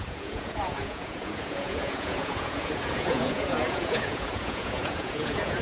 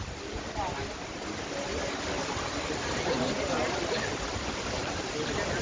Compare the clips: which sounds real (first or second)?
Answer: second